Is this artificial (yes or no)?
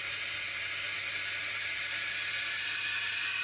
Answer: no